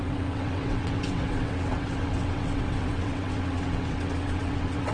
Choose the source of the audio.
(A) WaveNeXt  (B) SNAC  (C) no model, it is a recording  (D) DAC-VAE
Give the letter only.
A